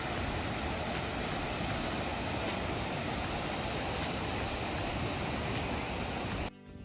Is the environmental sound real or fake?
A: real